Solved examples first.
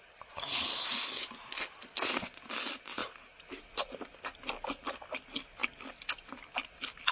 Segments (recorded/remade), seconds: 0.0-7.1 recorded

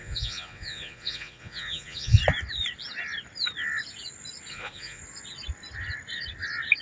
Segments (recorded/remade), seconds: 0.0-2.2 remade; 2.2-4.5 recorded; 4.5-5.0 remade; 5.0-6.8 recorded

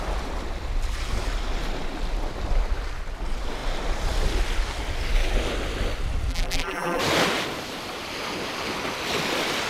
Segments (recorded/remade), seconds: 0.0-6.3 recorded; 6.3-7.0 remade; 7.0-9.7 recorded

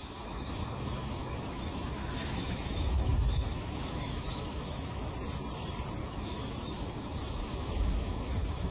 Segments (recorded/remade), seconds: 0.0-5.0 remade; 5.0-6.0 recorded; 6.0-8.7 remade